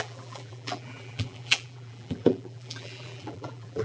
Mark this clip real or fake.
fake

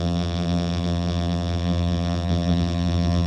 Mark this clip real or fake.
fake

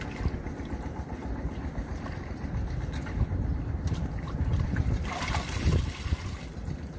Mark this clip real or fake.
fake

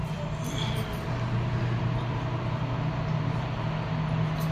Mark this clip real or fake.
real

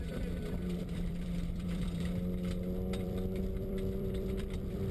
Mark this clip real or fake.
fake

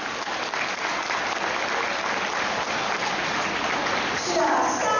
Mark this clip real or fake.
real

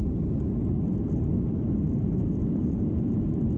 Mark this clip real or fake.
real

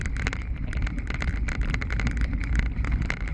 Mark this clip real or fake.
fake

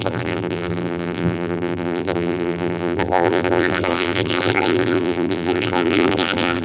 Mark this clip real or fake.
fake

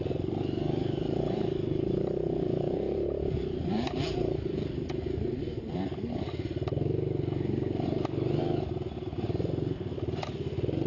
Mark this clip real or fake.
fake